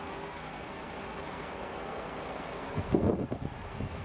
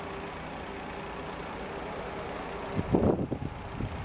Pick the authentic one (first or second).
second